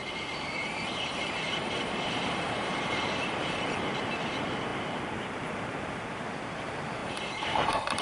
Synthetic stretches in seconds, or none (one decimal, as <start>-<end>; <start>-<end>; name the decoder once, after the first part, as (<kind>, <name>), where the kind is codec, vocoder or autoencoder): 0.6-3.8 (vocoder, BigVGAN v2); 7.0-8.0